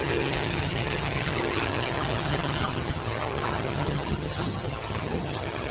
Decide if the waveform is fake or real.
fake